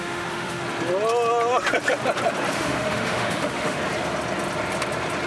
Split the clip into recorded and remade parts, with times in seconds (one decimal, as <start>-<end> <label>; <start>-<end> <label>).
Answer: 0.0-0.6 remade; 0.6-2.5 recorded; 2.5-3.8 remade; 3.8-5.3 recorded